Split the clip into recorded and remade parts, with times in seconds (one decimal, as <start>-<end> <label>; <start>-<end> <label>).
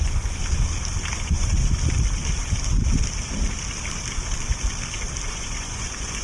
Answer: 0.0-0.4 remade; 0.4-1.1 recorded; 1.1-1.6 remade; 1.6-5.3 recorded; 5.3-6.2 remade